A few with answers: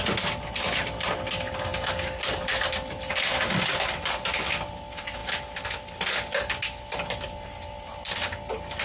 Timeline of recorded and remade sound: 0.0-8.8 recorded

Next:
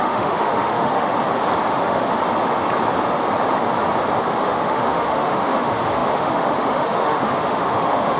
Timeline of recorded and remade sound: 0.0-1.1 remade; 1.1-1.7 recorded; 1.7-2.2 remade; 2.2-4.2 recorded; 4.2-8.2 remade

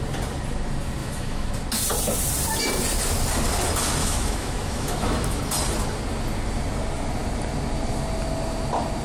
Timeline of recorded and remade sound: 0.0-1.0 recorded; 1.0-1.5 remade; 1.5-4.0 recorded; 4.0-5.4 remade; 5.4-9.0 recorded

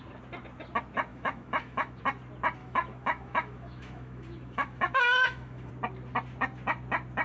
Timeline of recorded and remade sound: 0.0-1.1 recorded; 1.1-2.0 remade; 2.0-2.6 recorded; 2.6-5.7 remade; 5.7-7.2 recorded

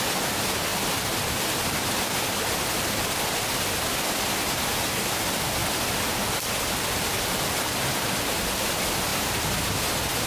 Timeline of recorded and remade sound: 0.0-10.3 recorded

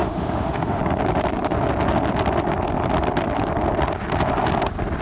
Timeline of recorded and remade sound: 0.0-0.8 remade; 0.8-5.0 recorded

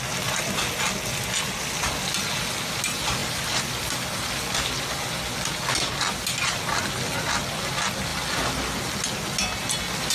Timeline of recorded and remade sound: 0.0-10.1 recorded

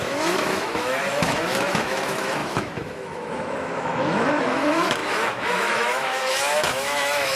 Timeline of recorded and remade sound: 0.0-7.4 remade